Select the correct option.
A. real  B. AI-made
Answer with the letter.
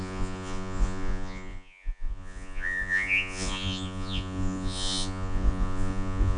B